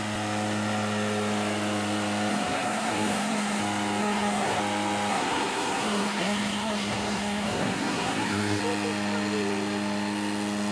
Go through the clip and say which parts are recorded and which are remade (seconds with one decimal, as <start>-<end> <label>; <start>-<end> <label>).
0.0-2.3 recorded; 2.3-3.6 remade; 3.6-4.0 recorded; 4.0-4.6 remade; 4.6-5.1 recorded; 5.1-8.6 remade; 8.6-10.7 recorded

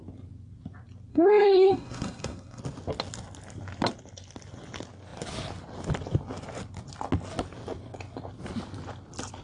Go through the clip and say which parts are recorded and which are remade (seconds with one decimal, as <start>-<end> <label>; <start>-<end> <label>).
0.0-1.1 recorded; 1.1-2.6 remade; 2.6-9.4 recorded

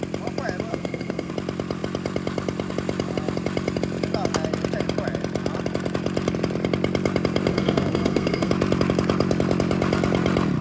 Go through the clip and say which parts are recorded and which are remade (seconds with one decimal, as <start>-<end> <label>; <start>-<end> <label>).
0.0-0.7 recorded; 0.7-1.3 remade; 1.3-7.5 recorded; 7.5-8.5 remade; 8.5-10.6 recorded

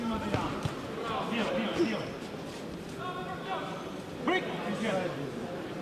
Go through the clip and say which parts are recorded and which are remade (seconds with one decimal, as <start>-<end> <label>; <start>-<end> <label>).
0.0-5.8 recorded

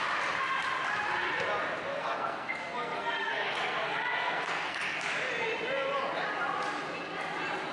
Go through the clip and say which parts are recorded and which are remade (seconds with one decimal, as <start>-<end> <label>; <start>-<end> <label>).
0.0-1.9 recorded; 1.9-5.0 remade; 5.0-7.7 recorded

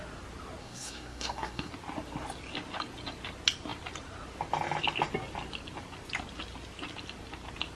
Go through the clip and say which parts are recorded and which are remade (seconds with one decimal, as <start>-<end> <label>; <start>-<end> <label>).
0.0-0.6 recorded; 0.6-1.7 remade; 1.7-7.7 recorded

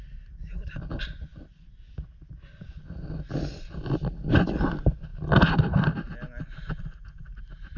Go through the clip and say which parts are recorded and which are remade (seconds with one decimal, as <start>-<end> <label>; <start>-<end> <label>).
0.0-7.8 recorded

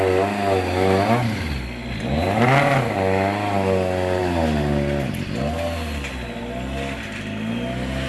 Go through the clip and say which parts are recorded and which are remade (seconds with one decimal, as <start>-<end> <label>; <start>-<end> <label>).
0.0-8.1 recorded